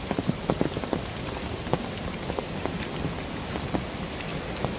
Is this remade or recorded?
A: recorded